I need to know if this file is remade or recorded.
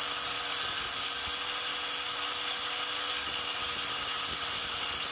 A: recorded